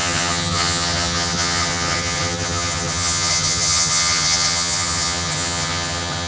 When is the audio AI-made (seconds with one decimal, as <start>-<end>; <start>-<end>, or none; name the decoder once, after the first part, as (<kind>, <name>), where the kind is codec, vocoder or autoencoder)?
0.0-6.3 (vocoder, HiFi-GAN)